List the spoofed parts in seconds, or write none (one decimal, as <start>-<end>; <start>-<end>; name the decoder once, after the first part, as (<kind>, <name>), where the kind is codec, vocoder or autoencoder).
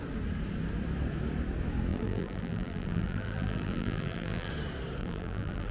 1.9-4.5 (vocoder, BigVGAN v2); 5.0-5.7